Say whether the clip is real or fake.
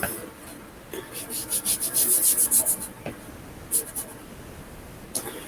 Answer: real